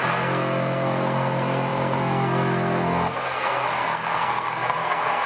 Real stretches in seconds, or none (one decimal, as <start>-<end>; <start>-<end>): none

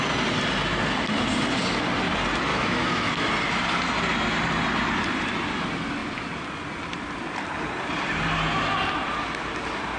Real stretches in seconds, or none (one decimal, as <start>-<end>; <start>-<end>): 0.0-2.5; 3.3-10.0

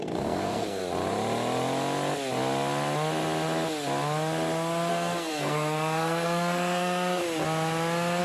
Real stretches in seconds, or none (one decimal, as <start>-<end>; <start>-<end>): 0.8-4.9; 7.2-8.2

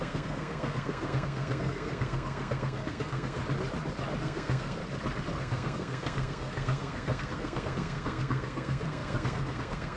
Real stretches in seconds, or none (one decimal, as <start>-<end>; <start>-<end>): 3.4-4.2; 4.8-5.4

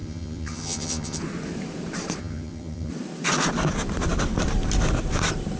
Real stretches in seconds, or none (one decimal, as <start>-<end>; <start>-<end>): 1.2-2.2; 2.9-5.6